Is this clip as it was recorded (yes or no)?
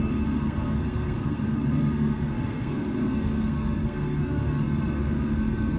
no